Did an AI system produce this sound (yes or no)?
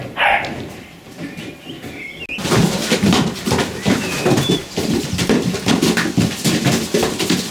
no